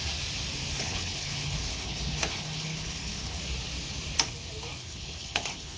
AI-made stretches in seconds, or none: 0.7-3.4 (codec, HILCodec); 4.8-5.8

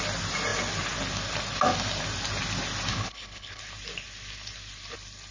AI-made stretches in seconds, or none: 2.9-3.6 (codec, HILCodec)

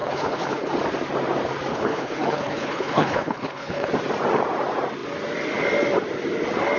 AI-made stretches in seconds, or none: 0.0-0.7 (codec, HILCodec); 1.7-3.9

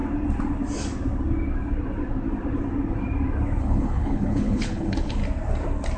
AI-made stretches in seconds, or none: 3.6-5.2 (codec, HILCodec)

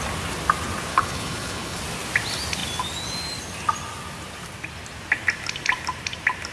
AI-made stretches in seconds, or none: 0.9-1.8 (codec, HILCodec)

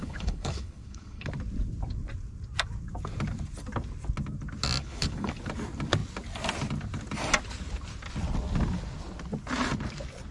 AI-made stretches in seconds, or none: 0.0-1.3 (codec, HILCodec); 4.8-5.3

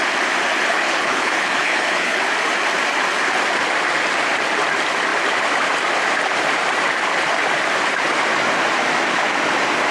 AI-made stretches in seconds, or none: 0.7-2.2 (codec, HILCodec)